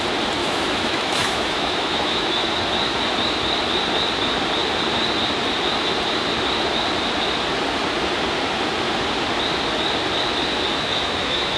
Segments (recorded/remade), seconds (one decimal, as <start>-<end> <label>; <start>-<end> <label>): 0.0-0.4 recorded; 0.4-2.3 remade; 2.3-10.7 recorded; 10.7-11.6 remade

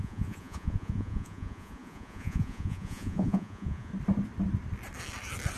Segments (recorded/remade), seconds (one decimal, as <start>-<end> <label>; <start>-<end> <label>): 0.0-3.9 remade; 3.9-5.6 recorded